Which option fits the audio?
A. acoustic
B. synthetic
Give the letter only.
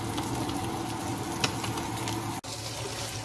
A